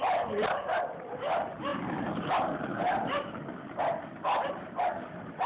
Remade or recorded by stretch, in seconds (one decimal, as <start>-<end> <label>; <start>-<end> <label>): 0.0-5.5 recorded